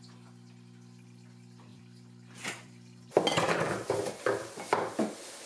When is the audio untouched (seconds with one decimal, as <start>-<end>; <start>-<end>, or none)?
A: 0.0-1.7; 3.1-5.5